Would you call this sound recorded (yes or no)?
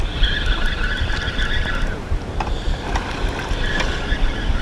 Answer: yes